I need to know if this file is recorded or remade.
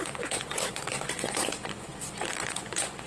remade